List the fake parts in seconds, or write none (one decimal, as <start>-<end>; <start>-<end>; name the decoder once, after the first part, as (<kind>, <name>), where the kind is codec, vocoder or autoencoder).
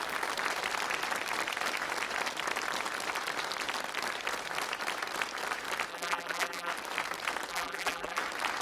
5.9-6.7 (vocoder, BigVGAN v2); 7.5-8.2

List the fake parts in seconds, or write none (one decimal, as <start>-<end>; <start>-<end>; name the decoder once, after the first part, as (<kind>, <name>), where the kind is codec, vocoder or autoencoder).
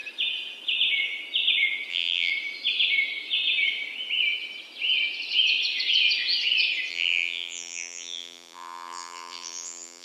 1.9-2.3 (vocoder, BigVGAN v2); 6.9-10.0